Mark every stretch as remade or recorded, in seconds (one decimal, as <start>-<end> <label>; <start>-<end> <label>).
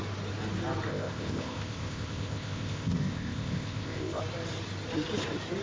0.0-0.9 recorded; 0.9-4.2 remade; 4.2-5.6 recorded